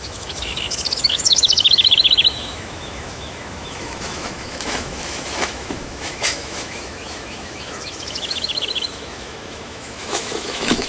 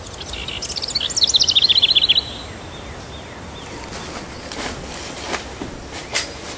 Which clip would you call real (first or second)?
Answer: second